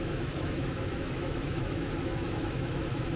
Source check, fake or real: fake